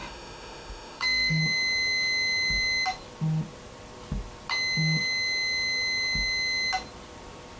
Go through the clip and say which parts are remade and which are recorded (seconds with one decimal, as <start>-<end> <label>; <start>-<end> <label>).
0.0-1.4 remade; 1.4-7.6 recorded